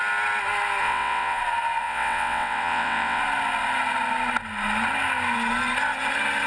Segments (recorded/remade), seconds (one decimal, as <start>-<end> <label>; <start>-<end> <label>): 0.0-0.8 recorded; 0.8-1.4 remade; 1.4-1.8 recorded; 1.8-3.2 remade; 3.2-6.5 recorded